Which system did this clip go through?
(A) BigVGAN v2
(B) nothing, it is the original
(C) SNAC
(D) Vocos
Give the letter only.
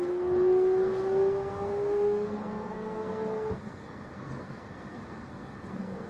C